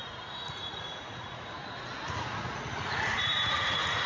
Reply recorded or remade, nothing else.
remade